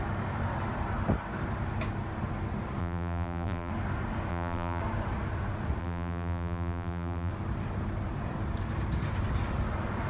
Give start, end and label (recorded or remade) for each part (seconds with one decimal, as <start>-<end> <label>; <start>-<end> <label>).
0.0-2.8 recorded; 2.8-3.7 remade; 3.7-4.3 recorded; 4.3-4.8 remade; 4.8-5.8 recorded; 5.8-7.3 remade; 7.3-10.1 recorded